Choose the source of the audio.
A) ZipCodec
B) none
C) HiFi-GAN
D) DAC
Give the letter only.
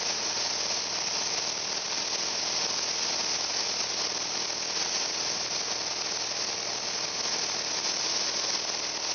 B